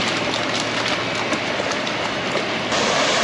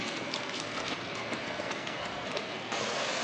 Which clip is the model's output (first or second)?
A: second